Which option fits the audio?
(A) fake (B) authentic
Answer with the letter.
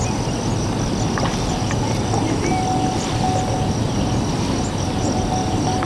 B